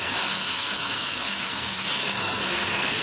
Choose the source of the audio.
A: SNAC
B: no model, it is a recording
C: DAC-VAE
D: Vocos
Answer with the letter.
A